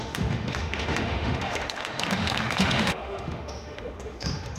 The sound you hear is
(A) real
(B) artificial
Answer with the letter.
B